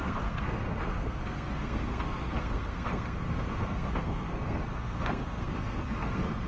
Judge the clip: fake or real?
fake